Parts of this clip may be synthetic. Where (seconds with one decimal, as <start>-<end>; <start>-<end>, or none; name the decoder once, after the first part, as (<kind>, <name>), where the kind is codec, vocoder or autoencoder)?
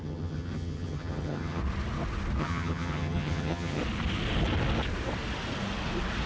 0.0-1.6 (vocoder, HiFi-GAN); 2.4-3.8